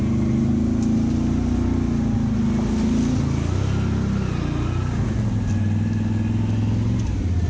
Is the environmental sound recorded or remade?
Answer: recorded